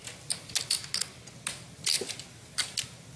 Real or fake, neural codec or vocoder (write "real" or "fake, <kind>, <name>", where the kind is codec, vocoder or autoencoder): real